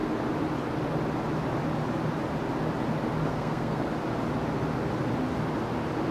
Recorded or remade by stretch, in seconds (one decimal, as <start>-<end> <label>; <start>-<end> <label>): 0.0-3.3 recorded; 3.3-3.9 remade; 3.9-6.1 recorded